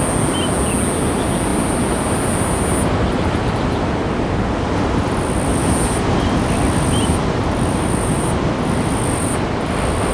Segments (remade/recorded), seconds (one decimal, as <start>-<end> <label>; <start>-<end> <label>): 0.0-10.1 recorded